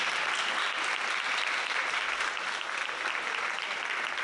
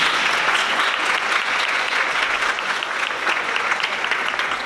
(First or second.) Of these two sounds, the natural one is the first